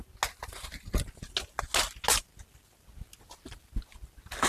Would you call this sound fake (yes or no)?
no